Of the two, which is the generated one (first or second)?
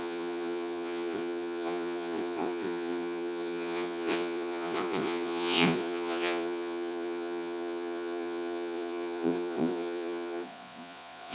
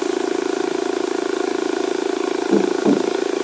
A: first